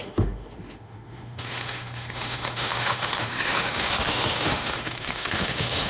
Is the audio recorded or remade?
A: remade